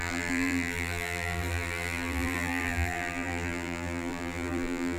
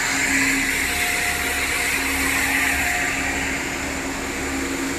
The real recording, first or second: second